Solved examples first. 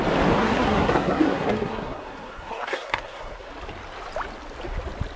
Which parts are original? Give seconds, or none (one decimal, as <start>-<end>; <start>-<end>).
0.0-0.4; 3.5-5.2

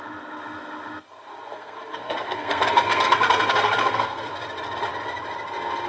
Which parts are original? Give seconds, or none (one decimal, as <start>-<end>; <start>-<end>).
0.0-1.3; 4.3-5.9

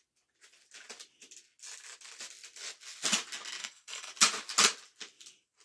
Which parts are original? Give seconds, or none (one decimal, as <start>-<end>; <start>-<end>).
0.0-3.6; 4.1-5.6

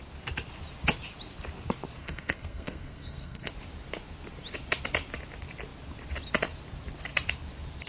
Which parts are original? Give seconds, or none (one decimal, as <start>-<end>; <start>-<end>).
0.0-2.0; 3.5-7.9

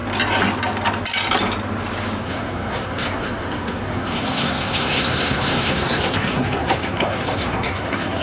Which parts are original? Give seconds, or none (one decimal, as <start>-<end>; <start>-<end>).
0.0-2.2

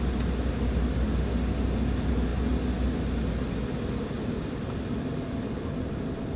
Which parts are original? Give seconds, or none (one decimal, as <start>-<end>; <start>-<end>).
0.0-6.4

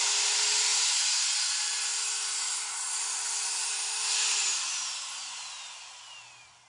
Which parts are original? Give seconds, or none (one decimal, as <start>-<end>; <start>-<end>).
0.0-6.7